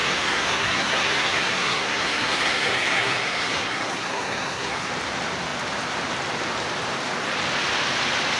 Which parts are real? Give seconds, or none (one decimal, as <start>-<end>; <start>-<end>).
4.9-8.4